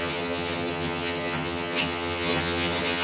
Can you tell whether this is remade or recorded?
remade